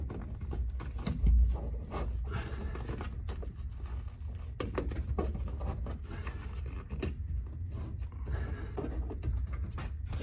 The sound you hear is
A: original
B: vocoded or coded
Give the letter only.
A